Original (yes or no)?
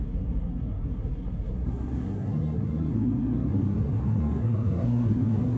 no